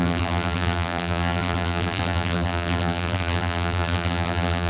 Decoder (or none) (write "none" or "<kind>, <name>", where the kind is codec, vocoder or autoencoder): vocoder, BigVGAN v2